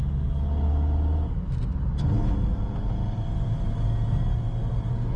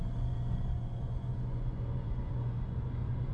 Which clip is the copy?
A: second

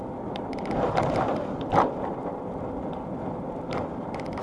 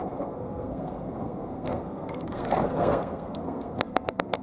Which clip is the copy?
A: second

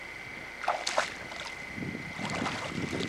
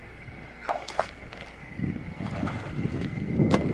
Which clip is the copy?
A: second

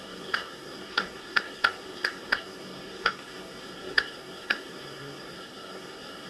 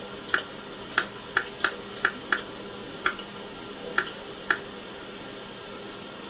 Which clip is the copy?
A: first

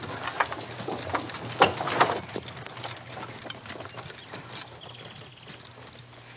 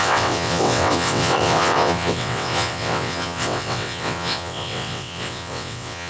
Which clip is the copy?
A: second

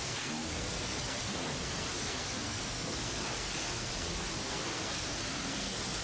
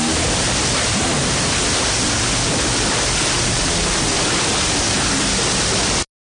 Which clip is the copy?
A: first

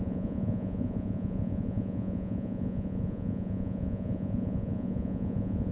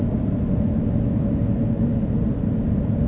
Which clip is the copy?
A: first